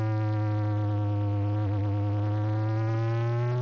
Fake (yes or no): no